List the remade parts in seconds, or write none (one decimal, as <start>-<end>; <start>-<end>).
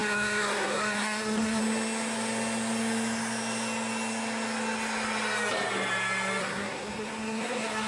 0.0-1.6; 6.4-7.9